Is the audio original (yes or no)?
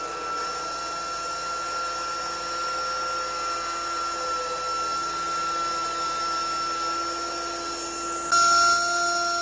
yes